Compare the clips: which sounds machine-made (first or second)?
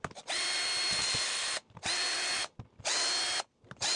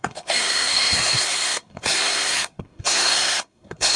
second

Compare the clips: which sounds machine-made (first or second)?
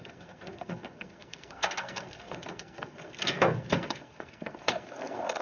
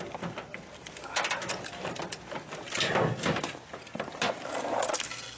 first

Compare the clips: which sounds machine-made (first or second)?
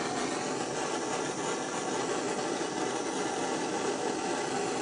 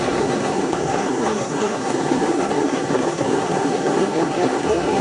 second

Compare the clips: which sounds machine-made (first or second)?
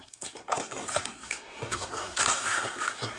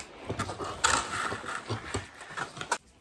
first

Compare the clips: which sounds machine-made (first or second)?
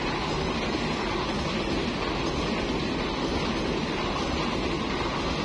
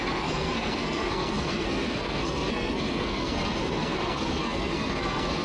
second